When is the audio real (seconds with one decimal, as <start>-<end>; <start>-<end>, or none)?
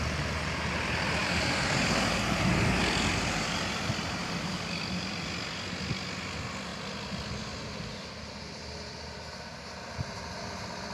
0.0-1.2; 2.8-4.2; 4.8-10.9